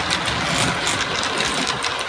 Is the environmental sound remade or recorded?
recorded